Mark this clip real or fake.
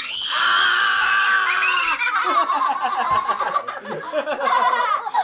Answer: real